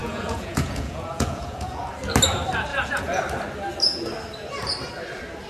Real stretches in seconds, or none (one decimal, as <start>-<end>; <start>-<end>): 1.8-2.7; 3.2-5.5